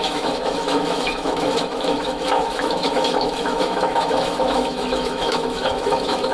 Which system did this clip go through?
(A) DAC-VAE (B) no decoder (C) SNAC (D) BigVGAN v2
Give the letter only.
A